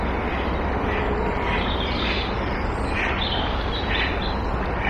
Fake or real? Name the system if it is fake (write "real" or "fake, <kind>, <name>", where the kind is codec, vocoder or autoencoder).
real